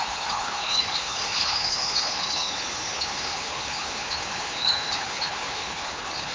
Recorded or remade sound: remade